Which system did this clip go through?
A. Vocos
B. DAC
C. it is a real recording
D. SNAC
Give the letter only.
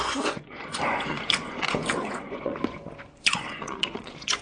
A